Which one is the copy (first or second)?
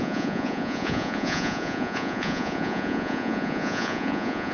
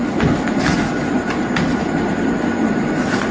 first